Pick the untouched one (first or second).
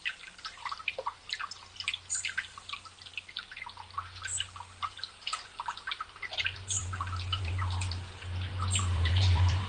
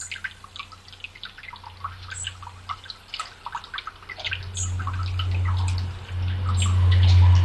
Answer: second